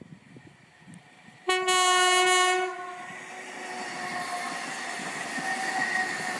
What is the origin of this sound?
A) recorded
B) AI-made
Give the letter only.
A